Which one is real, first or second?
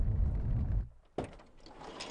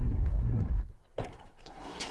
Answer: first